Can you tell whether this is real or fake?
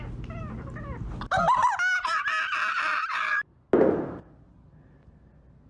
real